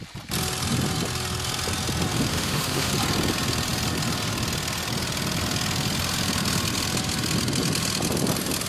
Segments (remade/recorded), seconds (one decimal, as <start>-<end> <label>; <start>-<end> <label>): 0.0-2.3 recorded; 2.3-2.9 remade; 2.9-8.7 recorded